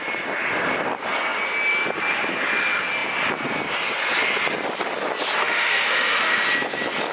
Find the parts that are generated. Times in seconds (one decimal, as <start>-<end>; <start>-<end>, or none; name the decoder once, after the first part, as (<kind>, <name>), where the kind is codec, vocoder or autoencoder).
5.4-6.4 (autoencoder, DAC-VAE)